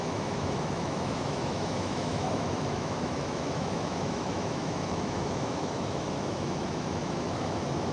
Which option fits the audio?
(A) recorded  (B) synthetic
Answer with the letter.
B